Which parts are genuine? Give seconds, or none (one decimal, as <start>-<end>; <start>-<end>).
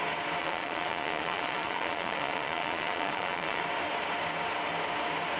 0.0-0.4; 3.6-5.4